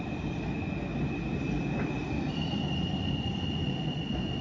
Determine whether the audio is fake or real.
real